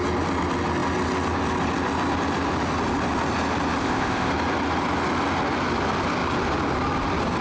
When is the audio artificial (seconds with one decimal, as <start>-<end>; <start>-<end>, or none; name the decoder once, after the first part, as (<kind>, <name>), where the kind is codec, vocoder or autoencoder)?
3.8-4.3 (codec, ZipCodec)